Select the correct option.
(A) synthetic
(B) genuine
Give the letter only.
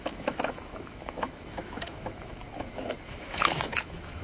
A